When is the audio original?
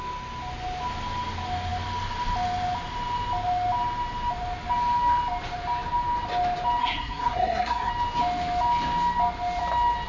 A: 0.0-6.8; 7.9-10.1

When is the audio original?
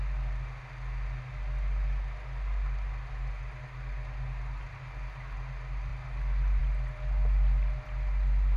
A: 0.0-8.6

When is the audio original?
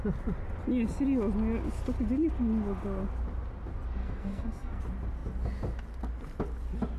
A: 0.0-4.0; 4.8-7.0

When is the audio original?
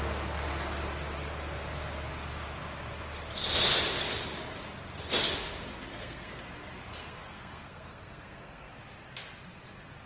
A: 0.0-5.9; 6.4-7.0; 8.7-10.1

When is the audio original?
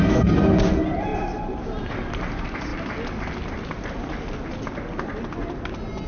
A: 0.0-6.1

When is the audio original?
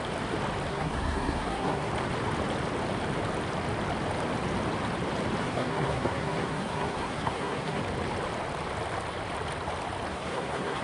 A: 0.0-0.7; 1.9-5.4; 7.8-10.1